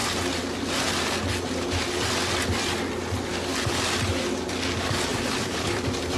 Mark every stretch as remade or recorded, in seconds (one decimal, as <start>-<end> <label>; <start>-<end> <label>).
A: 0.0-1.1 remade; 1.1-5.1 recorded; 5.1-6.2 remade

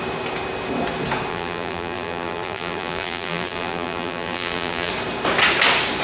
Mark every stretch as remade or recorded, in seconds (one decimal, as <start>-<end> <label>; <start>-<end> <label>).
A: 0.0-1.3 recorded; 1.3-4.9 remade; 4.9-6.0 recorded

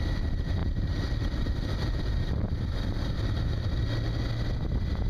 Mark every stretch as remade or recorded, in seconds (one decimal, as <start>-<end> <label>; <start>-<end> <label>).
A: 0.0-0.6 recorded; 0.6-3.7 remade; 3.7-5.1 recorded

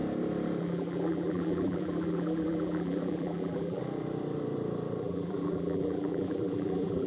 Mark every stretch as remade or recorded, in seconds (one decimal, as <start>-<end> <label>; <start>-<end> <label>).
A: 0.0-0.6 recorded; 0.6-3.8 remade; 3.8-5.0 recorded; 5.0-7.1 remade

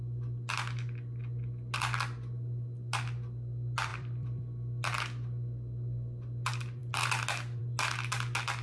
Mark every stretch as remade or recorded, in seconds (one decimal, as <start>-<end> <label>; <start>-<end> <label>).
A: 0.0-3.9 recorded; 3.9-4.4 remade; 4.4-8.6 recorded

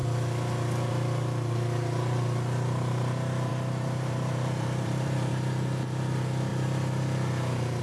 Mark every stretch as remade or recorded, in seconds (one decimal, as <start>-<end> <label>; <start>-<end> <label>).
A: 0.0-3.5 recorded; 3.5-5.3 remade; 5.3-7.8 recorded

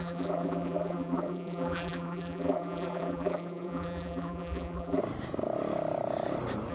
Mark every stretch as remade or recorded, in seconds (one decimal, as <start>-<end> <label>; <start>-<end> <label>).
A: 0.0-5.0 remade; 5.0-6.7 recorded